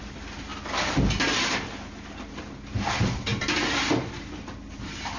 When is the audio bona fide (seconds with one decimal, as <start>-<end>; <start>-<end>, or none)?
0.0-5.2